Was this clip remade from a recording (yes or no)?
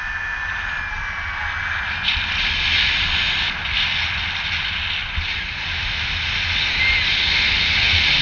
no